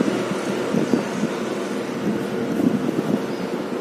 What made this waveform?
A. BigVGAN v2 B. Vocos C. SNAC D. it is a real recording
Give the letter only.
D